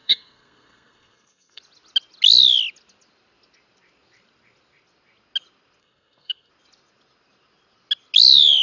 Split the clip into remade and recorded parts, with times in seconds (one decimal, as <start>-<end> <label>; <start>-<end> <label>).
0.0-1.6 remade; 1.6-5.8 recorded; 5.8-6.5 remade; 6.5-8.6 recorded

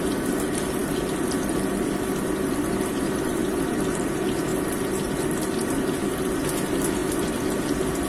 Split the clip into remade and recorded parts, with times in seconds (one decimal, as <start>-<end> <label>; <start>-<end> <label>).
0.0-8.1 recorded

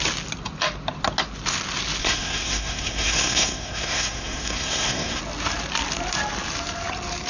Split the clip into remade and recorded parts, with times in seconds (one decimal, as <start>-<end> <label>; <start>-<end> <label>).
0.0-2.0 recorded; 2.0-5.2 remade; 5.2-7.3 recorded

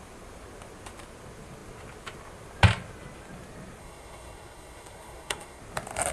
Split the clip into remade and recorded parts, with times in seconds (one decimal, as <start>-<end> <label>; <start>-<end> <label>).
0.0-3.8 recorded; 3.8-5.6 remade; 5.6-6.1 recorded

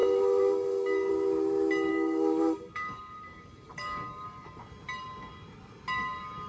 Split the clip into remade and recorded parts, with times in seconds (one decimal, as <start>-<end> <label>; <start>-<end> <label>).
0.0-1.1 remade; 1.1-1.9 recorded; 1.9-4.6 remade; 4.6-6.5 recorded

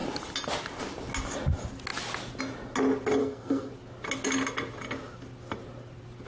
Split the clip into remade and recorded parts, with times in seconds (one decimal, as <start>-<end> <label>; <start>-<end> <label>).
0.0-3.2 recorded; 3.2-3.7 remade; 3.7-6.3 recorded

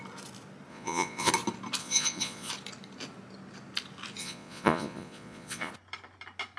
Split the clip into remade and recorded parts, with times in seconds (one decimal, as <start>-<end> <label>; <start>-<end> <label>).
0.0-0.7 recorded; 0.7-1.3 remade; 1.3-1.8 recorded; 1.8-2.5 remade; 2.5-4.2 recorded; 4.2-5.7 remade; 5.7-6.6 recorded